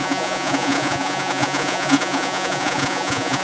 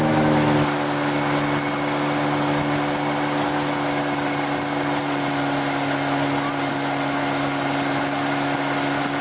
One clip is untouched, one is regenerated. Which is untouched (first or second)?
second